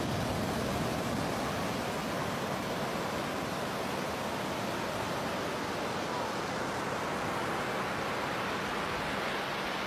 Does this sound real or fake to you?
real